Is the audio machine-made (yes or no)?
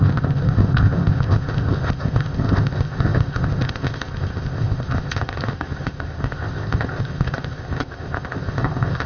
yes